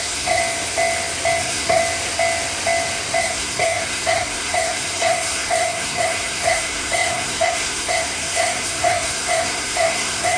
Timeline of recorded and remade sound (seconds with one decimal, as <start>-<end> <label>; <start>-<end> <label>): 0.0-0.4 remade; 0.4-1.4 recorded; 1.4-1.8 remade; 1.8-3.2 recorded; 3.2-10.4 remade